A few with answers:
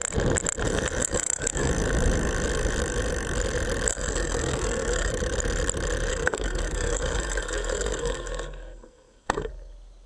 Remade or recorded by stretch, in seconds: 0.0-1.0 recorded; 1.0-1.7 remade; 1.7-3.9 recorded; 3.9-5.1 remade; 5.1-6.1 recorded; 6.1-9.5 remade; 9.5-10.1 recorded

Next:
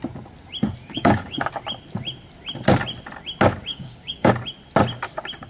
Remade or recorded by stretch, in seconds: 0.0-0.8 recorded; 0.8-1.5 remade; 1.5-3.7 recorded; 3.7-4.3 remade; 4.3-5.5 recorded

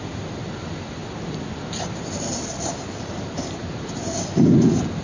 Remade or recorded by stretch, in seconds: 0.0-5.0 recorded